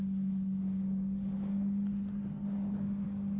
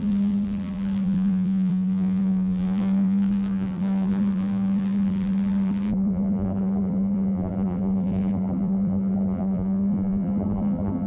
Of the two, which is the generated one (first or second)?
second